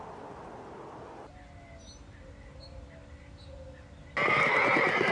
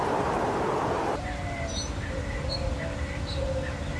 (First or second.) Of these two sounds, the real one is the first